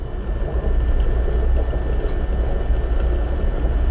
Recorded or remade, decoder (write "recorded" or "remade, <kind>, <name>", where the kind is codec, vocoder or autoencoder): recorded